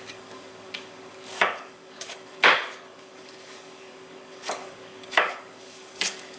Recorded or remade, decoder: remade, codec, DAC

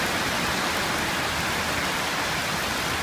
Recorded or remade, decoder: recorded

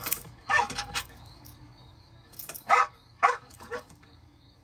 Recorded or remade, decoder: remade, codec, DAC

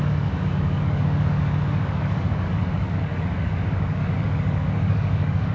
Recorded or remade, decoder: remade, codec, DAC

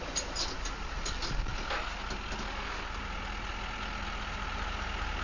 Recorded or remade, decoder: recorded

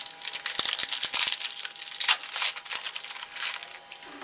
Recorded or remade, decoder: recorded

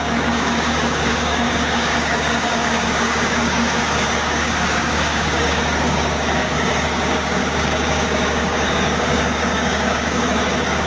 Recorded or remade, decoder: remade, codec, DAC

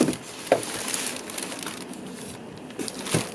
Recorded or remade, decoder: recorded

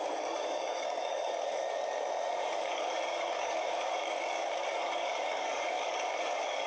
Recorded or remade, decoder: remade, codec, DAC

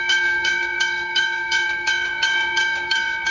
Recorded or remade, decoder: remade, codec, DAC